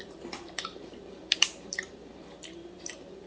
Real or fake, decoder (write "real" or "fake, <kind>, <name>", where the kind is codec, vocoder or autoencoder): real